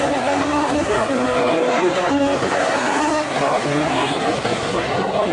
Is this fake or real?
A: fake